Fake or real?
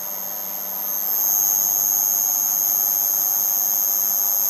real